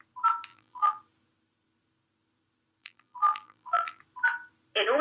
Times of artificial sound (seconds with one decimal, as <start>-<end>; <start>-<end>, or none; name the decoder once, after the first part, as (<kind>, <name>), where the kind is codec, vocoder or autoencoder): 0.5-1.0 (vocoder, BigVGAN v2); 2.8-4.0